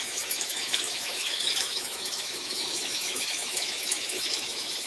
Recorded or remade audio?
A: remade